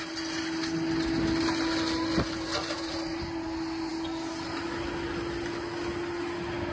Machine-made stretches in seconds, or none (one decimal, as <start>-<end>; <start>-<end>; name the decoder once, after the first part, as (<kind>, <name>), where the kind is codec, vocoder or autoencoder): 2.5-3.0 (vocoder, BigVGAN v2)